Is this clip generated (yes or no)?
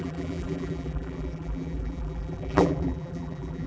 yes